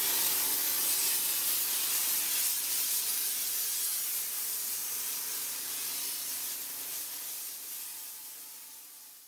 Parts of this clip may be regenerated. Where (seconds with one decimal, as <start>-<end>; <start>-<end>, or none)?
0.0-2.0; 4.0-9.3